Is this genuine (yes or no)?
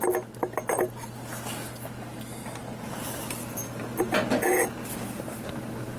yes